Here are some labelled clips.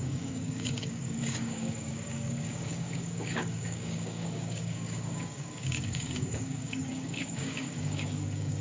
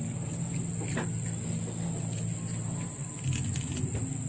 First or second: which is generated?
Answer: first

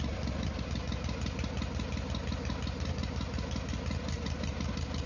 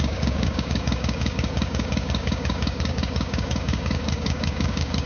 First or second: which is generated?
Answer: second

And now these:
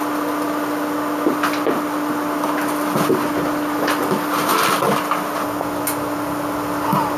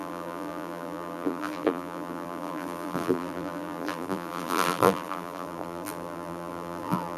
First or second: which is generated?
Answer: second